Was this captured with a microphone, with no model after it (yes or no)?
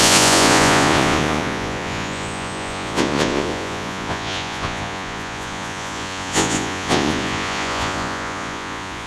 no